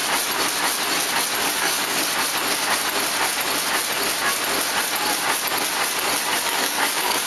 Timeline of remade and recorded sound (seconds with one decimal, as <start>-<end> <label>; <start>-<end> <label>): 0.0-1.4 recorded; 1.4-2.0 remade; 2.0-6.4 recorded; 6.4-7.3 remade